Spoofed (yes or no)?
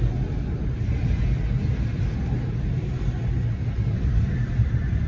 no